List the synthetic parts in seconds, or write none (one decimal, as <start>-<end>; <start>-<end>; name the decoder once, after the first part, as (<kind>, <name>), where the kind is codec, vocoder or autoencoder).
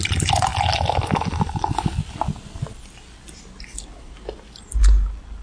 none